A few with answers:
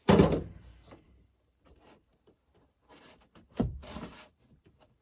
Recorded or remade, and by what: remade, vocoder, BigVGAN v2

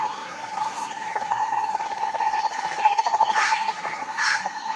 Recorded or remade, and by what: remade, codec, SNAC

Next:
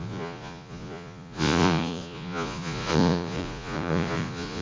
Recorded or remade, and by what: remade, vocoder, Vocos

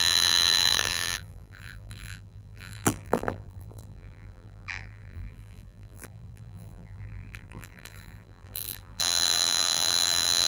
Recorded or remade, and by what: remade, vocoder, BigVGAN v2